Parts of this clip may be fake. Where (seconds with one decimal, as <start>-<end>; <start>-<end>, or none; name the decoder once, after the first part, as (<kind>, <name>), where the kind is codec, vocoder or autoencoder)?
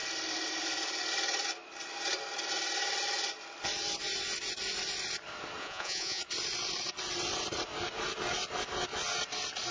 5.6-6.2 (vocoder, Vocos)